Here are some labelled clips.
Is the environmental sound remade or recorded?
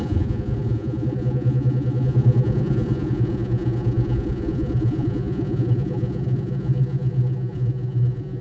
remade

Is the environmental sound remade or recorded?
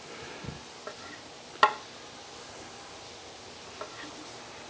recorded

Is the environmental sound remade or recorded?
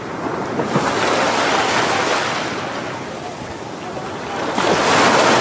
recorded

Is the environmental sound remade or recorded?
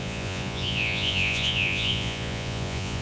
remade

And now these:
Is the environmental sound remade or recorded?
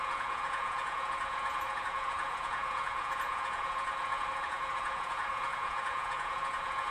remade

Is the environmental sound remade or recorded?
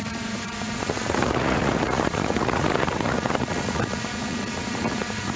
remade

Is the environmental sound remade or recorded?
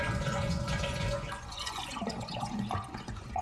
remade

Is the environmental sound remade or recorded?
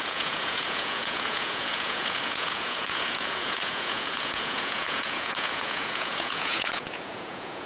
remade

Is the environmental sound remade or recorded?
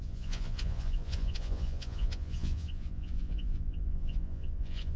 remade